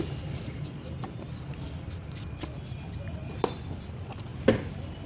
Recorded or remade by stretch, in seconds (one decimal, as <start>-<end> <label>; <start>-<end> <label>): 0.0-5.1 recorded